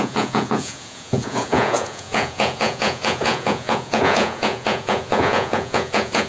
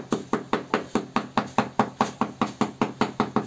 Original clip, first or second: second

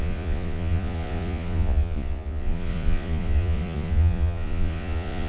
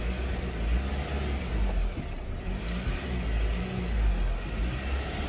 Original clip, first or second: second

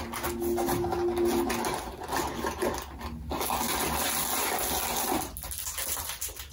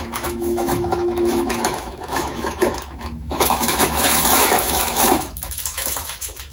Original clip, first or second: first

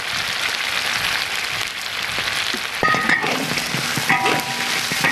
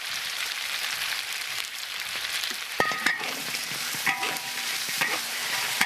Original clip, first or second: first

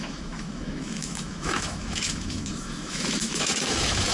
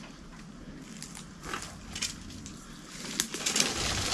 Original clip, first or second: second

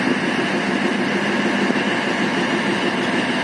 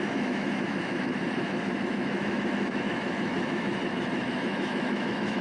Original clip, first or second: first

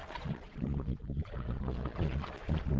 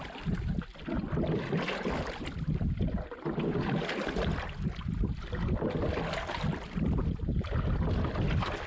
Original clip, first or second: second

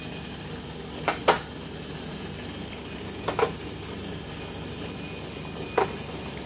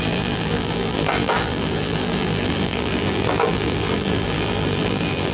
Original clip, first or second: first